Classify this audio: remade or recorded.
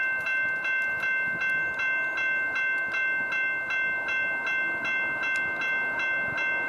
recorded